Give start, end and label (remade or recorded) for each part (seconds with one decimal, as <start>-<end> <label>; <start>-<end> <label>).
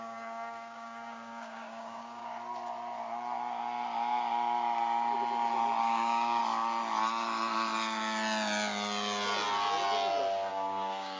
0.0-2.2 remade; 2.2-5.8 recorded; 5.8-6.4 remade; 6.4-10.5 recorded; 10.5-11.2 remade